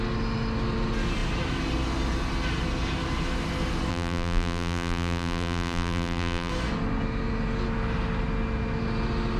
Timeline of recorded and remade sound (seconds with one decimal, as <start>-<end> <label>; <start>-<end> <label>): 0.0-3.9 recorded; 3.9-6.5 remade; 6.5-9.4 recorded